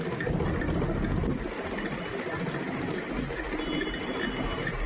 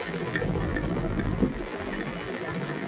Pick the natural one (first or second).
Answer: first